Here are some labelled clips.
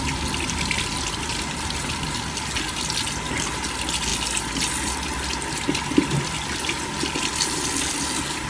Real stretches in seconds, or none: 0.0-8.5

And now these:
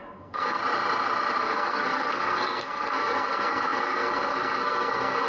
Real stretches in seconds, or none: 0.6-1.4

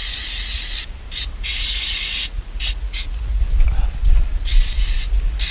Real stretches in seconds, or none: 0.8-1.5; 3.4-5.5

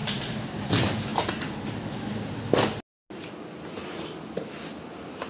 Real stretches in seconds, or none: 0.0-5.3

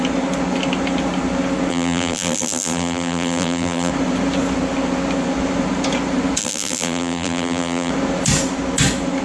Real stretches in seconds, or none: 0.0-1.7; 3.9-6.4; 7.9-9.2

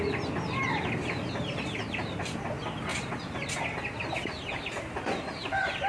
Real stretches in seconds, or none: 0.0-5.9

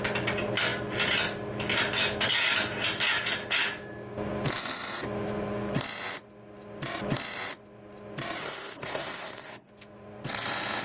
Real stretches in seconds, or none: 0.0-8.4; 9.7-10.8